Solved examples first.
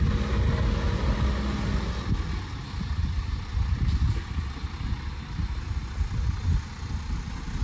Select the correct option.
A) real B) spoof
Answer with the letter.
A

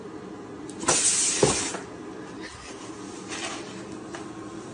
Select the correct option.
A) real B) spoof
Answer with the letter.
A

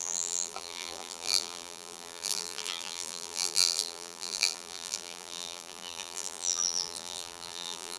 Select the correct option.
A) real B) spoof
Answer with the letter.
B